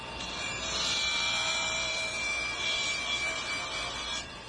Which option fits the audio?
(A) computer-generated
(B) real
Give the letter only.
A